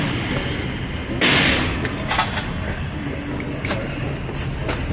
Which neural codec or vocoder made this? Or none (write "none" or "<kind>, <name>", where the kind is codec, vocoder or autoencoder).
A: none